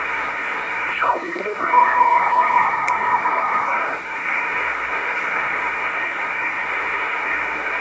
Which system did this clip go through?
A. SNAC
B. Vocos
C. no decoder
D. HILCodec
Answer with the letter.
A